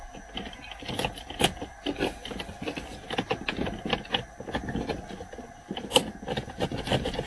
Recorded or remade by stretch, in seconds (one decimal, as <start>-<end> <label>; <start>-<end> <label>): 0.0-7.3 recorded